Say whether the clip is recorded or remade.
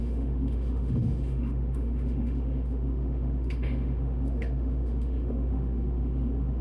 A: remade